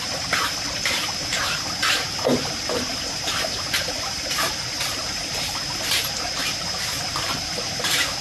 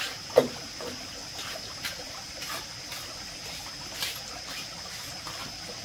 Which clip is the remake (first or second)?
first